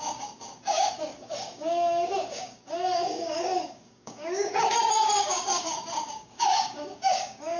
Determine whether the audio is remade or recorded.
remade